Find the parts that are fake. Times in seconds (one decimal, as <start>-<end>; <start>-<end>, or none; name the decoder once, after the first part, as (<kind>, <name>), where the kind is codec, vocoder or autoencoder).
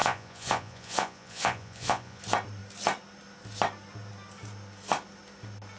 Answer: 0.0-2.2 (vocoder, Vocos)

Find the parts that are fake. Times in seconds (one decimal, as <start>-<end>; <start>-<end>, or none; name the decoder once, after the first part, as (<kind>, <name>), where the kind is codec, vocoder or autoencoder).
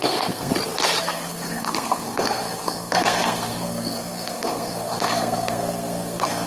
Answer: 0.0-0.5 (codec, SNAC); 1.0-6.5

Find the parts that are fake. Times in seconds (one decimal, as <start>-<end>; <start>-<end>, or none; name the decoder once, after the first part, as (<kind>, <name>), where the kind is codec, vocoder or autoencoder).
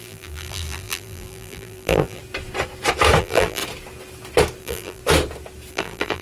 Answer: 0.0-2.2 (vocoder, BigVGAN v2); 3.2-3.6; 4.6-5.0; 5.7-6.2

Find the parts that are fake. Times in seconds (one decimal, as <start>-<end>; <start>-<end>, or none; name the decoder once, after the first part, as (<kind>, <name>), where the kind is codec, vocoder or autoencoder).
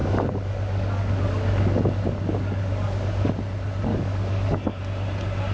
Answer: 0.0-3.3 (codec, DAC); 3.9-4.8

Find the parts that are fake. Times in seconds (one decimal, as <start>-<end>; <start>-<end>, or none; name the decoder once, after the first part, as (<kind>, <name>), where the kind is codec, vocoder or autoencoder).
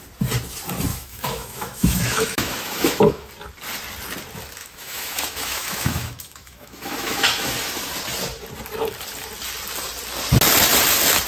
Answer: 0.9-3.3 (autoencoder, DAC-VAE); 4.6-7.5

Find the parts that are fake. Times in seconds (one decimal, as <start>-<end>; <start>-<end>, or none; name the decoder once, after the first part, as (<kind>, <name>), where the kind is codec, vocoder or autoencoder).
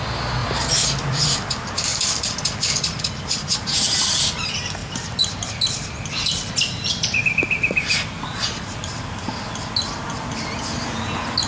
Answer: 0.4-1.5 (vocoder, BigVGAN v2); 1.9-2.6; 4.8-8.9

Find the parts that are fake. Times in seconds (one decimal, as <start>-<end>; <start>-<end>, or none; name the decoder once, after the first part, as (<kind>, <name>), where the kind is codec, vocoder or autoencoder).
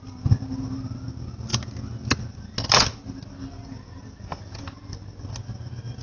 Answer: none